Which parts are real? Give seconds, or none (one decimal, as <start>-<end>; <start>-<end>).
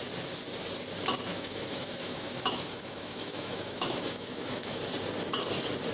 0.0-1.3; 4.8-5.9